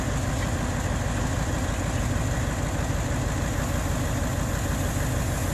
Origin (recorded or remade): recorded